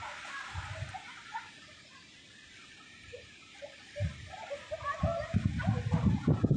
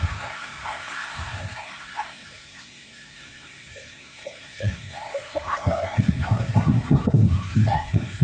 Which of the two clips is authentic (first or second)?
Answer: first